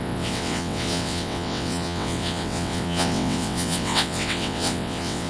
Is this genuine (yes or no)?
no